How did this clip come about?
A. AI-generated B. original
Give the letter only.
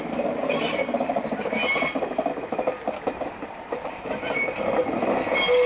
A